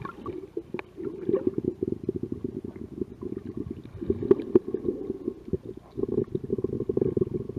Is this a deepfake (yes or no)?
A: no